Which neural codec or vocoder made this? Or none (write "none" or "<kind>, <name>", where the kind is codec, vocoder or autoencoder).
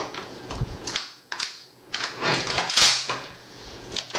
vocoder, Vocos